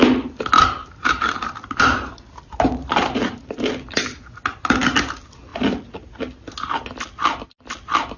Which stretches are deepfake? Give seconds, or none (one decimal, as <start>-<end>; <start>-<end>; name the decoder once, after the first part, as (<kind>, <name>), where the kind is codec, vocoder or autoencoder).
0.8-3.7 (vocoder, BigVGAN v2)